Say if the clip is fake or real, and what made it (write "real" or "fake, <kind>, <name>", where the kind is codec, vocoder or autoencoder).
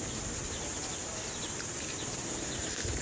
real